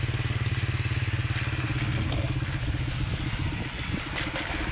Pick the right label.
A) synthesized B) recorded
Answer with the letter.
B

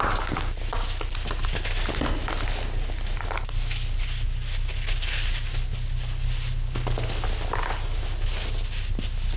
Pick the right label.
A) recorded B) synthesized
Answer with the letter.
A